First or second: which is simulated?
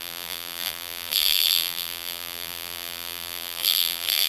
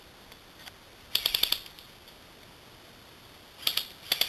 first